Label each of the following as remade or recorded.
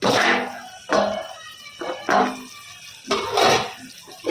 recorded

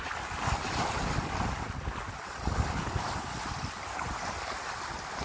recorded